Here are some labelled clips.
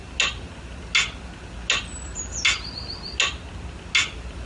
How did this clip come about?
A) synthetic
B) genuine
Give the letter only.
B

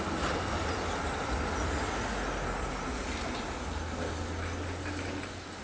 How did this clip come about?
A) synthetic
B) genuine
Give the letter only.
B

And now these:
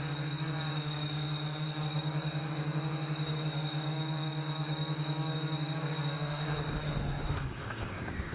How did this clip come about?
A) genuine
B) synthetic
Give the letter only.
B